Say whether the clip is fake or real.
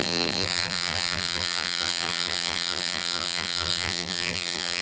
fake